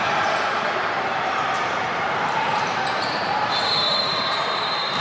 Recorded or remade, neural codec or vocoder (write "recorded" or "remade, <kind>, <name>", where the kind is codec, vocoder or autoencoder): remade, vocoder, BigVGAN v2